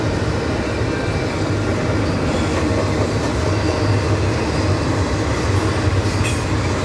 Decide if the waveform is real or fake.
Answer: real